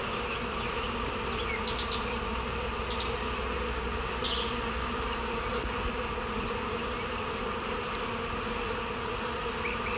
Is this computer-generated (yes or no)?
no